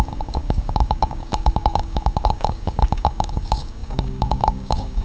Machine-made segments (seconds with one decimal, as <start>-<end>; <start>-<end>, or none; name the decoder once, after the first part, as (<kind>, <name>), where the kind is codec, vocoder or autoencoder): 0.0-5.0 (codec, DAC)